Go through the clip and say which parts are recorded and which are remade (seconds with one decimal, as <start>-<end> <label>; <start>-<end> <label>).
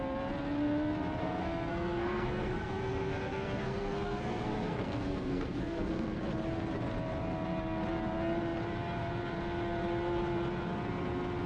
0.0-1.2 recorded; 1.2-6.2 remade; 6.2-11.5 recorded